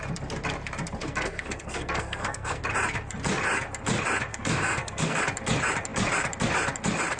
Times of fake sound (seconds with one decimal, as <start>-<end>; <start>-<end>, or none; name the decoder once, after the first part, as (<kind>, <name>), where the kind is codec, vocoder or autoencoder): 1.0-2.6 (codec, SNAC); 4.3-5.2